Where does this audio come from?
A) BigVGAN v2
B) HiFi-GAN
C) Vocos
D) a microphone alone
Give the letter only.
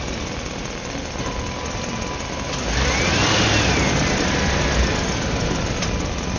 D